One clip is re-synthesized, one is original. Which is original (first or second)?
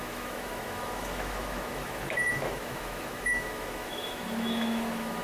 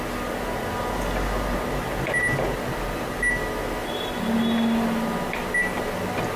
second